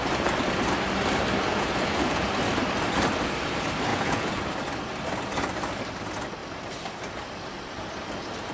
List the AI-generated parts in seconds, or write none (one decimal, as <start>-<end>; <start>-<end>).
1.5-2.3; 3.9-4.4